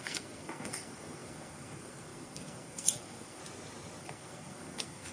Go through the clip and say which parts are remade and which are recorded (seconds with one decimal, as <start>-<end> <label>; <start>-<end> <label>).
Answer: 0.0-3.4 remade; 3.4-4.0 recorded; 4.0-5.1 remade